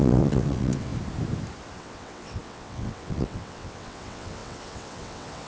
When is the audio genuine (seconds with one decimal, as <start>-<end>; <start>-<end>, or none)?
0.9-1.8